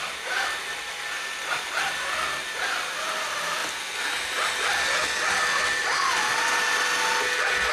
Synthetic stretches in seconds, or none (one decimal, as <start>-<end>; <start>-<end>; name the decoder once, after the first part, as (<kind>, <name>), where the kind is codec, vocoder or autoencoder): none